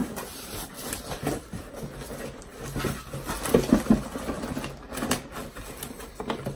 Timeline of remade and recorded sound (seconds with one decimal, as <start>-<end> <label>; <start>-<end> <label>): 0.0-2.5 remade; 2.5-6.6 recorded